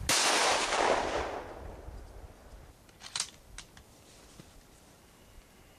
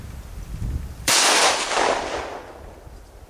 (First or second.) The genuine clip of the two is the first